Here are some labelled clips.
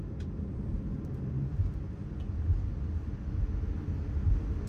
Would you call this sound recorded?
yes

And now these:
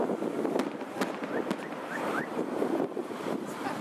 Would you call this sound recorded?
yes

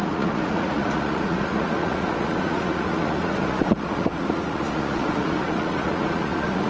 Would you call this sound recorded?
no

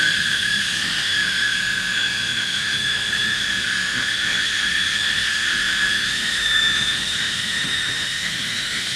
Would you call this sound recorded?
no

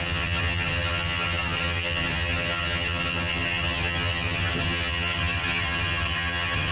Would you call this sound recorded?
no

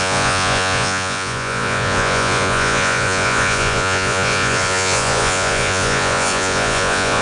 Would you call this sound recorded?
no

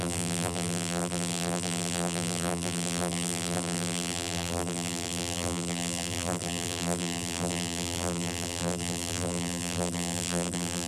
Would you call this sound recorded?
no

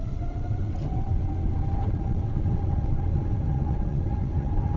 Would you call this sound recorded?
no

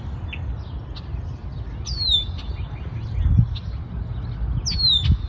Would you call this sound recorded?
yes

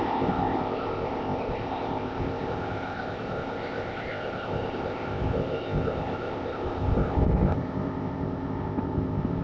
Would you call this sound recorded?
no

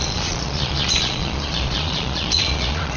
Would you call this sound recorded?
no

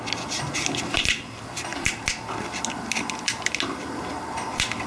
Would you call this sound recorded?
yes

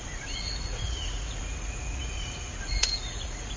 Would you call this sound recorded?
no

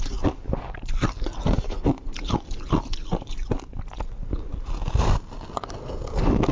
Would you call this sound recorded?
yes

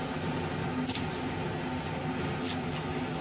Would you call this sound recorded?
yes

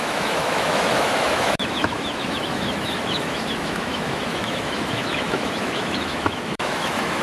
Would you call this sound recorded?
no